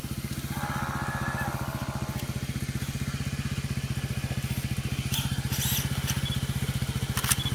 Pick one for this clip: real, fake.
real